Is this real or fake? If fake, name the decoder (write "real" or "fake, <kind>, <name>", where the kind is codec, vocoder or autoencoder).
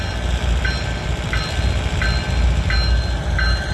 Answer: real